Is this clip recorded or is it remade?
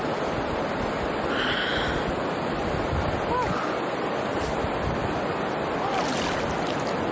recorded